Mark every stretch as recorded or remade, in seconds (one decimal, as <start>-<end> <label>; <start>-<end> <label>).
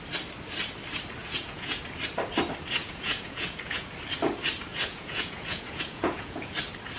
0.0-1.2 recorded; 1.2-1.8 remade; 1.8-2.8 recorded; 2.8-3.9 remade; 3.9-4.7 recorded; 4.7-6.5 remade; 6.5-7.0 recorded